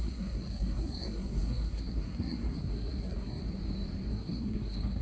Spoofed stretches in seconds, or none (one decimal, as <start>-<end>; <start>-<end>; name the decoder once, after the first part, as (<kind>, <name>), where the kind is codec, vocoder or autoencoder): 0.0-3.4 (codec, SNAC); 4.1-5.0